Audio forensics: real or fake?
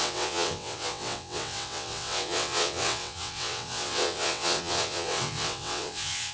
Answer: fake